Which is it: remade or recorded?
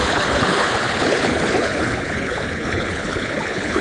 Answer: remade